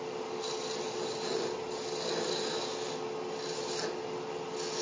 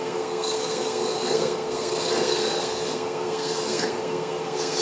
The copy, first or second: second